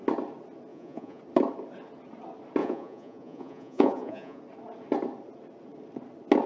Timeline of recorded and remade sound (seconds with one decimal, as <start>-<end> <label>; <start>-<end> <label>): 0.0-0.7 recorded; 0.7-1.2 remade; 1.2-2.6 recorded; 2.6-4.4 remade; 4.4-6.5 recorded